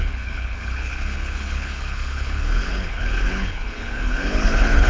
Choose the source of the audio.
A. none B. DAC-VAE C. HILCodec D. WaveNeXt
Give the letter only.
C